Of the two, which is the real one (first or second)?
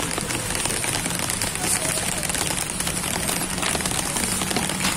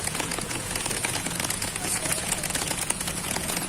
first